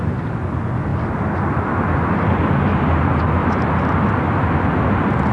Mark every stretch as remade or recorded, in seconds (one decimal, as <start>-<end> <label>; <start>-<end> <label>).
0.0-5.3 recorded